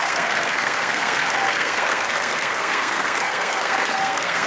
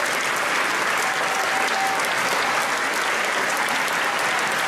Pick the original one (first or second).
second